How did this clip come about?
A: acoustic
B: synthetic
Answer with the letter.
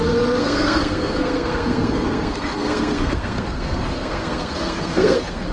B